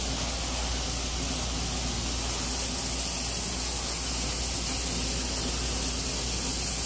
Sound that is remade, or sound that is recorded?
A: recorded